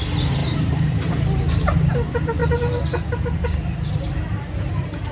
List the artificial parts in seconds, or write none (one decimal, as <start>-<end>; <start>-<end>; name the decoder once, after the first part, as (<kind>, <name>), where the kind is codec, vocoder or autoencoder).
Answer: 0.4-1.9 (vocoder, BigVGAN v2)